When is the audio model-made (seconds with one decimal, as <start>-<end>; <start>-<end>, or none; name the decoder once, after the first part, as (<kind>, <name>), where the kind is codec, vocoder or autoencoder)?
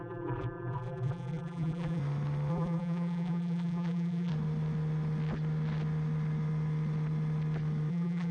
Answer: 0.0-2.0 (vocoder, BigVGAN v2); 2.5-4.3; 7.9-8.3